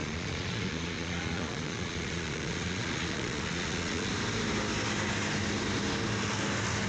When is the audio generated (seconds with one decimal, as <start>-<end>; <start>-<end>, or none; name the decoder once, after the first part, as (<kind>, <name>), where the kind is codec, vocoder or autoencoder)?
0.0-4.1 (vocoder, Vocos)